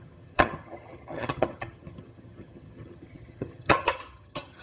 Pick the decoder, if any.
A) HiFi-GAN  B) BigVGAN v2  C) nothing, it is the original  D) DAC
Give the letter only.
A